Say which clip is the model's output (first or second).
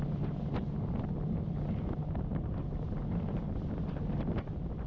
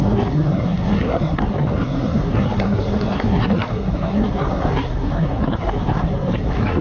second